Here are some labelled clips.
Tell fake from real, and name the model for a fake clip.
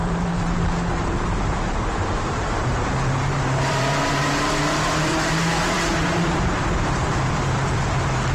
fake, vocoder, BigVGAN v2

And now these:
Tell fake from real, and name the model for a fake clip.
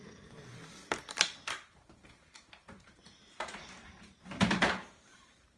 fake, vocoder, BigVGAN v2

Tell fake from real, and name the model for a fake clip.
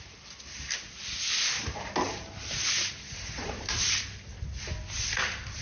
real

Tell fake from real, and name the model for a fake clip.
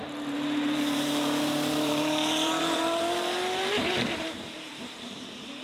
fake, vocoder, BigVGAN v2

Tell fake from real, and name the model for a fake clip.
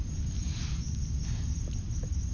fake, vocoder, BigVGAN v2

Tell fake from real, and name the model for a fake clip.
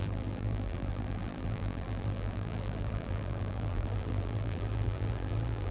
fake, vocoder, BigVGAN v2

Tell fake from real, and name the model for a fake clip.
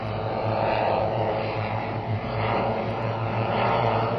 fake, vocoder, BigVGAN v2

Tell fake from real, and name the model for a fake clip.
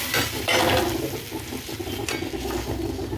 real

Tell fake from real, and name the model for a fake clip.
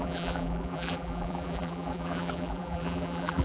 fake, vocoder, BigVGAN v2